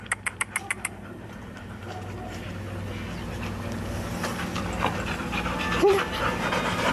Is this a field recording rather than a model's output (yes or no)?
yes